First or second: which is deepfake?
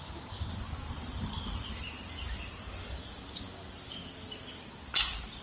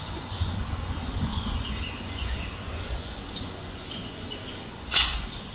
second